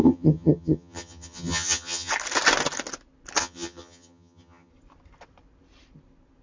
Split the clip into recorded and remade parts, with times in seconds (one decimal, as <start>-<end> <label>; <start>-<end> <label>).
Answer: 0.0-2.1 remade; 2.1-3.4 recorded; 3.4-4.7 remade; 4.7-6.4 recorded